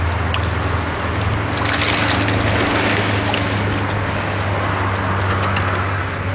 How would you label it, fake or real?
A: real